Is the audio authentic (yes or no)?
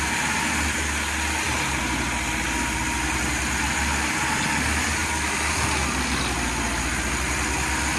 yes